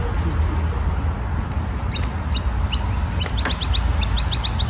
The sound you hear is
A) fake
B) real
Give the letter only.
B